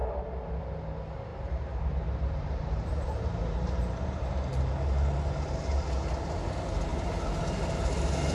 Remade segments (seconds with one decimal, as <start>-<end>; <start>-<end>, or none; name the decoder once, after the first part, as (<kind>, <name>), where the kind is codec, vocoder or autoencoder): 1.3-4.3 (vocoder, BigVGAN v2); 6.9-7.4